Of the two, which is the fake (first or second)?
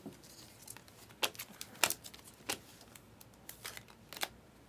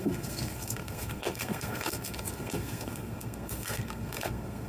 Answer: second